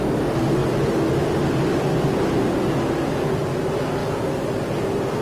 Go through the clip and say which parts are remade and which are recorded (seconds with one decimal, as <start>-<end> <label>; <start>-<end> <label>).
0.0-5.2 recorded